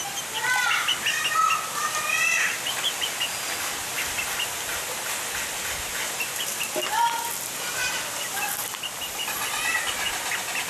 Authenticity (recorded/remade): recorded